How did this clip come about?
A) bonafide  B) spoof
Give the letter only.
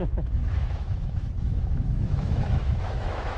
B